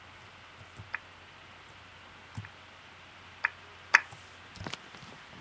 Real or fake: real